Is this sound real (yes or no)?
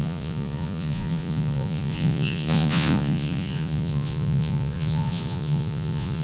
no